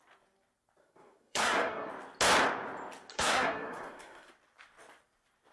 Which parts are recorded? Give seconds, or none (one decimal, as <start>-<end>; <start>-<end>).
0.0-0.8; 1.9-3.1; 4.3-5.5